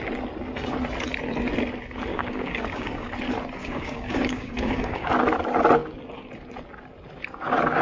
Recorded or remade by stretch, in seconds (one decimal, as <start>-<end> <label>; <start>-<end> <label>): 0.0-2.1 recorded; 2.1-3.1 remade; 3.1-3.6 recorded; 3.6-5.1 remade; 5.1-7.8 recorded